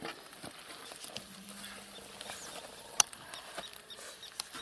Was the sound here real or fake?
real